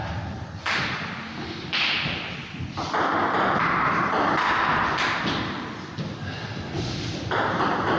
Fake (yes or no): yes